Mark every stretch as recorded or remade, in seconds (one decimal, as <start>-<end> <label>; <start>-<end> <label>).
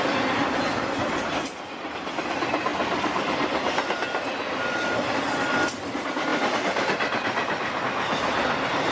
0.0-8.9 recorded